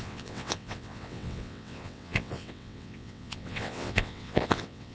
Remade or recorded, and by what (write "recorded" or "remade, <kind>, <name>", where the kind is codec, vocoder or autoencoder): remade, vocoder, WaveNeXt